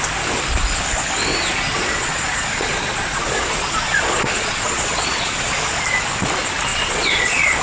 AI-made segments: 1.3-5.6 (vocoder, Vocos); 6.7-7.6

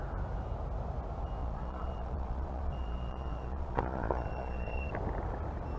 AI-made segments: 1.4-4.9 (vocoder, Vocos)

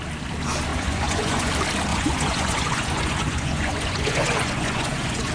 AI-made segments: 0.7-1.5 (vocoder, Vocos); 1.9-5.3

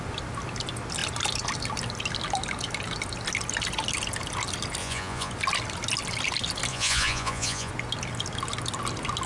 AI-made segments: 4.8-5.3 (vocoder, Vocos); 6.7-7.7

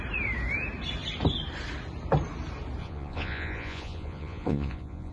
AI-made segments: 2.8-5.1 (vocoder, Vocos)

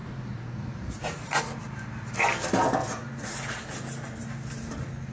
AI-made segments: 0.0-1.4 (vocoder, Vocos)

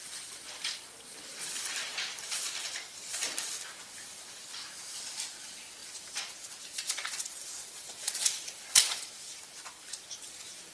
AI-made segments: none

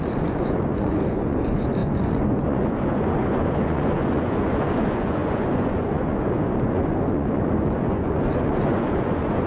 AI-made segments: 0.0-9.5 (vocoder, Vocos)